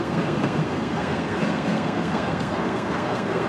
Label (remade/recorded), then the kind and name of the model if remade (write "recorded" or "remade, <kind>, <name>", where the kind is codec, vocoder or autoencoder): remade, codec, SNAC